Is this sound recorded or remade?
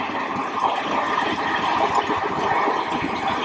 recorded